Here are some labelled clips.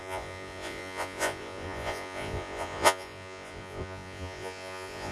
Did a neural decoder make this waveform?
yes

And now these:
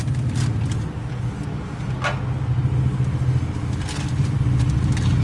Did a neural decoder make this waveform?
no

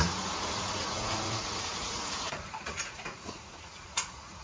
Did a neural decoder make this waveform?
yes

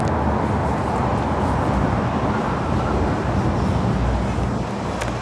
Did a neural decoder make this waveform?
no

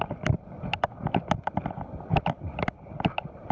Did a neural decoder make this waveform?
yes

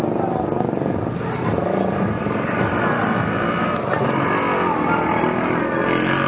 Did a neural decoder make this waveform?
no